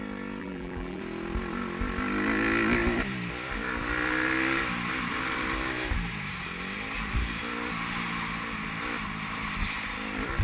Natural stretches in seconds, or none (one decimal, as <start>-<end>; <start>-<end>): 0.0-0.4; 1.0-10.4